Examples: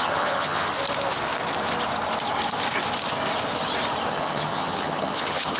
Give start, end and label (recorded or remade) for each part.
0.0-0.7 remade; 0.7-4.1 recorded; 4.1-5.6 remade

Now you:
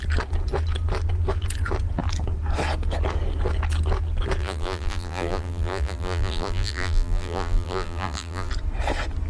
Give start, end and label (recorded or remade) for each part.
0.0-4.4 recorded; 4.4-8.5 remade; 8.5-9.3 recorded

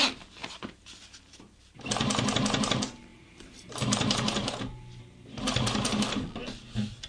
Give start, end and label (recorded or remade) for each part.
0.0-0.4 recorded; 0.4-1.3 remade; 1.3-3.1 recorded; 3.1-5.0 remade; 5.0-7.1 recorded

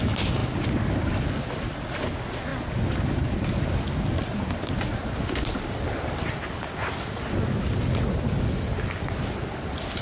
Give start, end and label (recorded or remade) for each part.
0.0-10.0 recorded

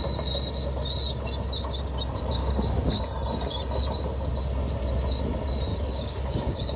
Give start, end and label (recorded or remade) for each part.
0.0-2.4 recorded; 2.4-3.0 remade; 3.0-5.7 recorded; 5.7-6.8 remade

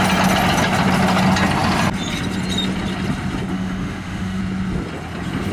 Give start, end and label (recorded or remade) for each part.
0.0-3.5 recorded; 3.5-4.4 remade; 4.4-5.5 recorded

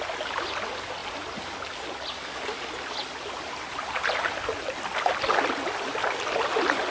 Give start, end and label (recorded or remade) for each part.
0.0-6.9 recorded

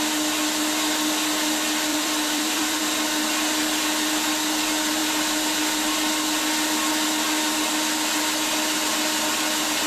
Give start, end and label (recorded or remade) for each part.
0.0-1.9 recorded; 1.9-2.8 remade; 2.8-9.9 recorded